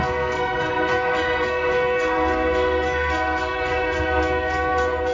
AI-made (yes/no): yes